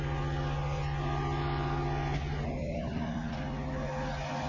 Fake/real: real